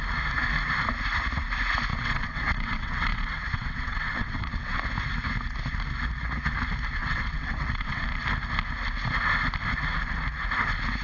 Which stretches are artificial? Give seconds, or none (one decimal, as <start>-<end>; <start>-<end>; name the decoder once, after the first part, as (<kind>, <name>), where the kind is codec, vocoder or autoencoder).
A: 1.9-4.8 (vocoder, WaveNeXt); 7.0-8.0